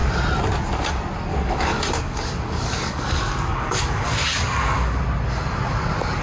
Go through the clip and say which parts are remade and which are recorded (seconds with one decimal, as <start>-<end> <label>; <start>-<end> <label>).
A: 0.0-1.3 recorded; 1.3-5.0 remade; 5.0-6.2 recorded